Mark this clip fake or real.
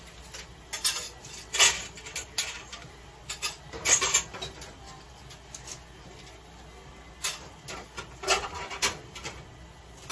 real